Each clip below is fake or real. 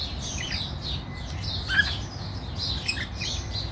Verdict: real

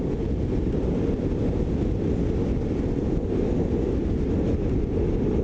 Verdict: real